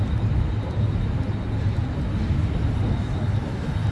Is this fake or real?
real